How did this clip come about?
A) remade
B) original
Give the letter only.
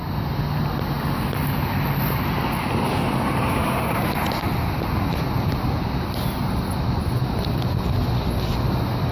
B